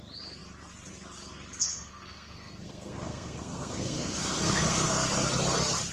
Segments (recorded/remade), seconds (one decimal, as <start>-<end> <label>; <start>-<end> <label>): 0.0-1.6 recorded; 1.6-5.1 remade; 5.1-5.9 recorded